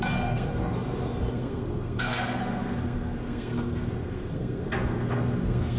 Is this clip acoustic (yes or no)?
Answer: no